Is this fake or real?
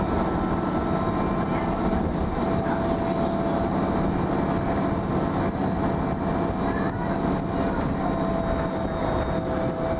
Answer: real